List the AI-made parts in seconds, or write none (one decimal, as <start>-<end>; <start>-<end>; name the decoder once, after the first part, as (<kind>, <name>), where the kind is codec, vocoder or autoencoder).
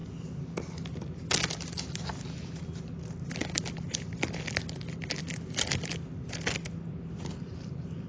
none